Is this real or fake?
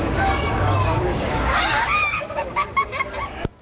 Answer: fake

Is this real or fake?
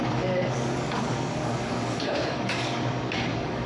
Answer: fake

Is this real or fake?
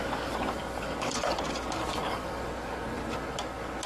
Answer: fake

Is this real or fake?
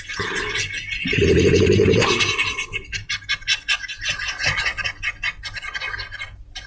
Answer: real